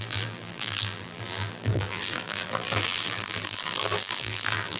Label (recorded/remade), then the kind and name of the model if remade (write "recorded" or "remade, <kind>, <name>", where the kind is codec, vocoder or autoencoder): remade, vocoder, BigVGAN v2